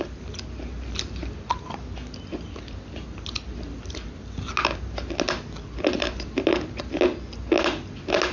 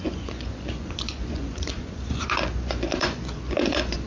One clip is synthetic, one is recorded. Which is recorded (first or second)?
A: first